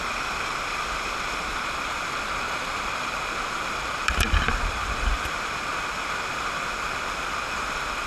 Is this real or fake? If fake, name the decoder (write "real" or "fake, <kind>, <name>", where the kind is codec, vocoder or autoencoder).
fake, vocoder, BigVGAN v2